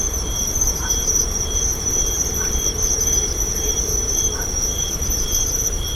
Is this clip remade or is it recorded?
remade